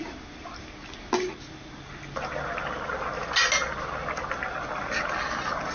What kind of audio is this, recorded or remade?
recorded